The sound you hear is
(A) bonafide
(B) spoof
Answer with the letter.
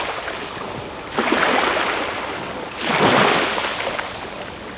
A